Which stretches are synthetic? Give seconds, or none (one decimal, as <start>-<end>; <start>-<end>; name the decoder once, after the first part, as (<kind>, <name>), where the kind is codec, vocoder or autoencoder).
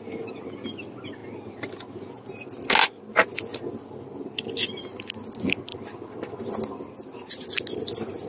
none